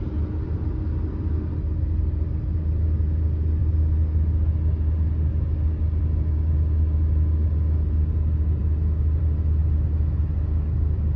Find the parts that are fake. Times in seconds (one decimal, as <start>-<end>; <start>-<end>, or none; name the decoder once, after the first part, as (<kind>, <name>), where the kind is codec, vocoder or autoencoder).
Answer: none